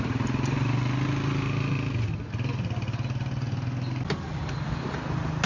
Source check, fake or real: real